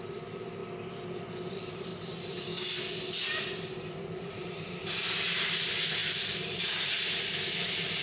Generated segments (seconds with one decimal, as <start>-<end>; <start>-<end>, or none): 0.0-0.6; 1.5-1.9; 3.8-8.0